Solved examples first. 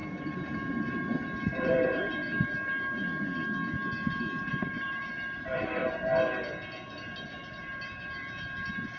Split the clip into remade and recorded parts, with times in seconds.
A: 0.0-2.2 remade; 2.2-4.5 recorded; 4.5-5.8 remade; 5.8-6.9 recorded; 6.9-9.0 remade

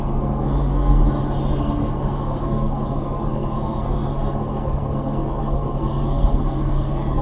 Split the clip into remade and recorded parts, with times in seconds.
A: 0.0-1.0 remade; 1.0-1.6 recorded; 1.6-7.2 remade

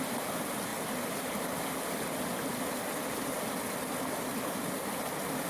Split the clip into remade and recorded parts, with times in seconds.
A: 0.0-5.5 recorded

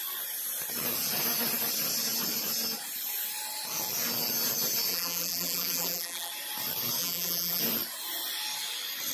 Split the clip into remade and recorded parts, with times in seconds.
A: 0.0-4.9 recorded; 4.9-6.3 remade; 6.3-7.0 recorded; 7.0-7.6 remade; 7.6-9.1 recorded